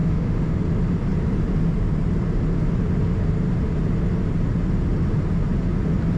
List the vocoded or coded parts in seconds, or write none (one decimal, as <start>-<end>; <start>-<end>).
0.0-0.6